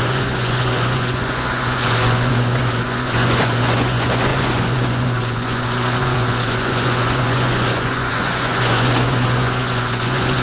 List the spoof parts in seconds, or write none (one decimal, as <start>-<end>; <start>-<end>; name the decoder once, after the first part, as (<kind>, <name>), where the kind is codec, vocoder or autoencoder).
0.0-10.4 (vocoder, Vocos)